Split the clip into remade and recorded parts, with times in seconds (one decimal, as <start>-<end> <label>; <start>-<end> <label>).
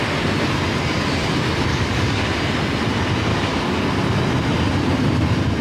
0.0-1.7 recorded; 1.7-2.3 remade; 2.3-3.3 recorded; 3.3-4.0 remade; 4.0-5.6 recorded